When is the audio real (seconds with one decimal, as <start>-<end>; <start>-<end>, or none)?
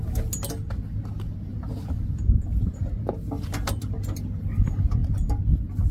0.0-5.9